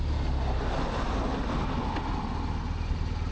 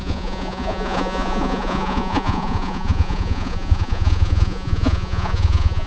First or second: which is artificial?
second